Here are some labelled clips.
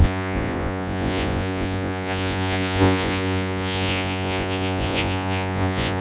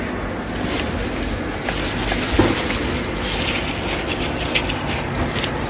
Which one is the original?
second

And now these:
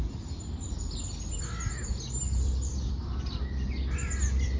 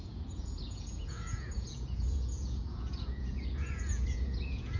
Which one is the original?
first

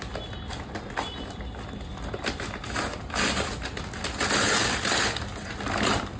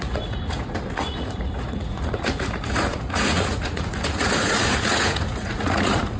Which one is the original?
first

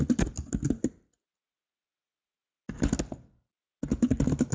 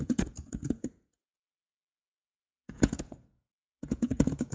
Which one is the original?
first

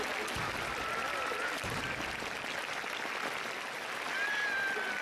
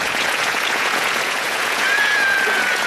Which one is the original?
first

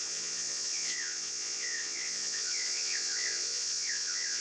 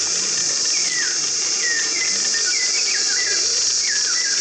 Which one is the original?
second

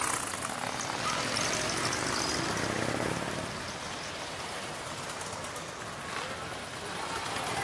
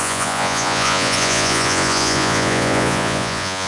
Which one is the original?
first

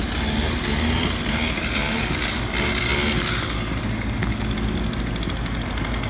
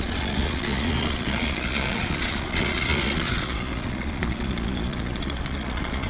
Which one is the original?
first